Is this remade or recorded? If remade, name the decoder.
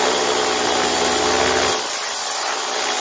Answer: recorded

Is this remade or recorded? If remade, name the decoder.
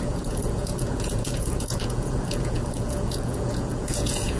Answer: remade, vocoder, Vocos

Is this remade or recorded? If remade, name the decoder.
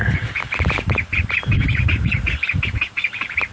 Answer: remade, vocoder, BigVGAN v2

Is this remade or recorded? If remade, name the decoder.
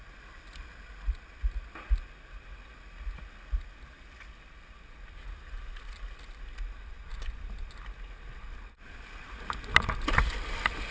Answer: recorded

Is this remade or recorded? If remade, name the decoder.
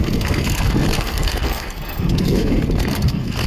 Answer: remade, codec, SNAC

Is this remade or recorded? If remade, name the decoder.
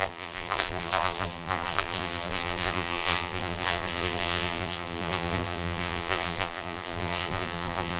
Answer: remade, vocoder, BigVGAN v2